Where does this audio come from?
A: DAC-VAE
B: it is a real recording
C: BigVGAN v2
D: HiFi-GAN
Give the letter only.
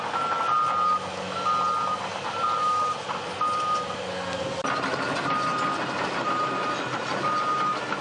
B